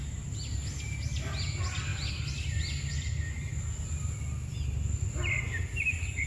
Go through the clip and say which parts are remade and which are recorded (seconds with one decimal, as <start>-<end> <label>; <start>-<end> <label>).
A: 0.0-6.3 recorded